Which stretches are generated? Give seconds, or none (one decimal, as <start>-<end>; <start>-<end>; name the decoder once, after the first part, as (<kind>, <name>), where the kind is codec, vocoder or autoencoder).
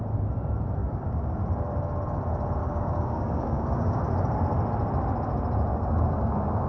0.8-1.4 (codec, DAC); 2.6-4.0; 5.7-6.7